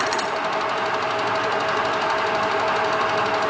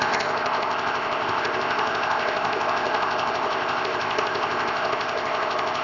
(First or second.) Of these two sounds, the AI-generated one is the second